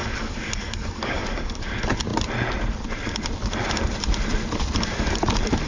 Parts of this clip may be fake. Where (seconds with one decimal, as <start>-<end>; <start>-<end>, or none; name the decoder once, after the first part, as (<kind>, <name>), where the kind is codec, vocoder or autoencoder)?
0.0-1.7 (codec, DAC)